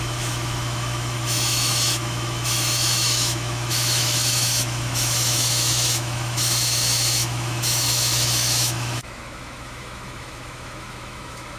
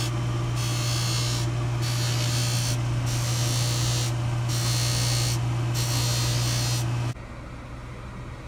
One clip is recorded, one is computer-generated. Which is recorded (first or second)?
second